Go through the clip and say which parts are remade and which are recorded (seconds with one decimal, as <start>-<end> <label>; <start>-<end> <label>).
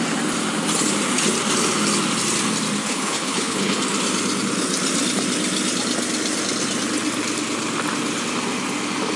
0.0-2.8 recorded; 2.8-3.8 remade; 3.8-9.2 recorded